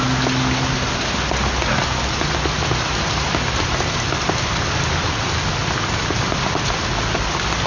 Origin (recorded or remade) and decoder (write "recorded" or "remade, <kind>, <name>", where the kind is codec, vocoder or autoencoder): recorded